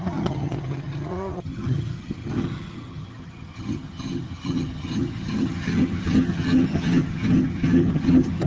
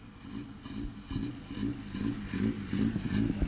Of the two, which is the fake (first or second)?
first